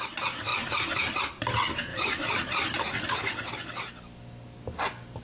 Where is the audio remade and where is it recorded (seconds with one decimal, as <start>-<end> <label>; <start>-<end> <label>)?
0.0-5.2 recorded